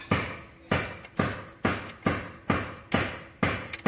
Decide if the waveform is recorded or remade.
recorded